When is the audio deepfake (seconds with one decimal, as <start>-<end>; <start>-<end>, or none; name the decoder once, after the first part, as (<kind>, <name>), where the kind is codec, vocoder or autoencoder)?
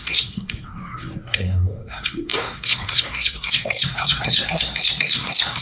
0.0-5.6 (codec, SNAC)